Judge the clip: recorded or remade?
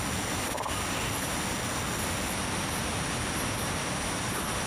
recorded